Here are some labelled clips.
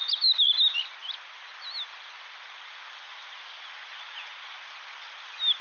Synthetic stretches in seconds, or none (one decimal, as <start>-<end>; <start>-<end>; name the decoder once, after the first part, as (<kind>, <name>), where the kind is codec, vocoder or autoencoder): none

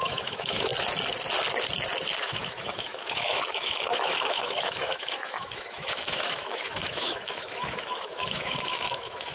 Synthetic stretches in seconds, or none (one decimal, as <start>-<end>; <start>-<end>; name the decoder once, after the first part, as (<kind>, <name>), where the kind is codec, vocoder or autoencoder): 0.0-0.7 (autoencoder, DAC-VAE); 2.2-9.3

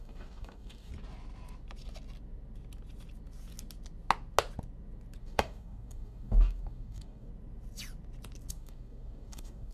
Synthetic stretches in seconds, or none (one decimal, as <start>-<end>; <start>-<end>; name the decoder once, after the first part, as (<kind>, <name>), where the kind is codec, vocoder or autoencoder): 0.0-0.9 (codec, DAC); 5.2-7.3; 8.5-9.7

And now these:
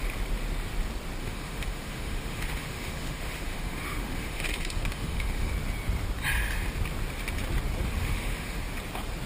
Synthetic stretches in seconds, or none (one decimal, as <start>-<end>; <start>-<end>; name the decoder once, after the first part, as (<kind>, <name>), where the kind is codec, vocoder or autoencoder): 1.2-5.5 (autoencoder, DAC-VAE); 8.0-8.6

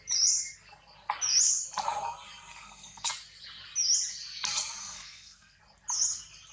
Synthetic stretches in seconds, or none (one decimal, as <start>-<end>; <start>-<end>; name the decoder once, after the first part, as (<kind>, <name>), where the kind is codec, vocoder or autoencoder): 2.5-3.1 (codec, SNAC); 4.8-5.6